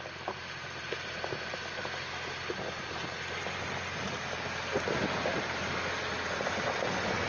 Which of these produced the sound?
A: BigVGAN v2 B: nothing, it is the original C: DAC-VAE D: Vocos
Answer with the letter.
B